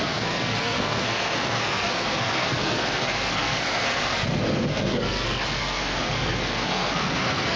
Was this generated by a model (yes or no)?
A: yes